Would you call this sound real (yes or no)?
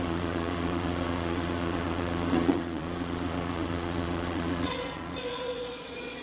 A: no